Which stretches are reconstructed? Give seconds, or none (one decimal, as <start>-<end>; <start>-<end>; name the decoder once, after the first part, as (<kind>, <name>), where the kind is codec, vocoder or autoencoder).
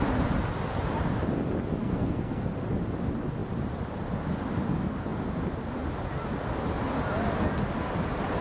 1.8-2.5 (codec, SNAC)